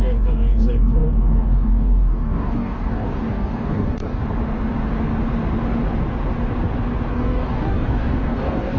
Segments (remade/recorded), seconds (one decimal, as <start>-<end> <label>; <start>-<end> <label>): 0.0-4.2 remade; 4.2-7.1 recorded; 7.1-8.8 remade